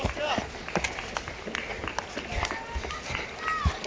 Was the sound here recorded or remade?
recorded